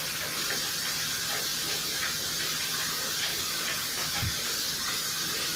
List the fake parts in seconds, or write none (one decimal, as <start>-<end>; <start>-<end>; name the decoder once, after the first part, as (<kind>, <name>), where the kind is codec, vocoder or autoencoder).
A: 3.3-4.9 (codec, DAC)